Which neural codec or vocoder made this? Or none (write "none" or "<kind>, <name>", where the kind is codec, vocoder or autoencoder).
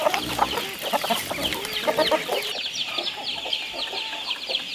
none